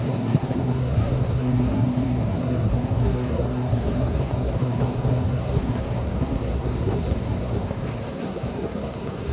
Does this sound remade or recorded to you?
remade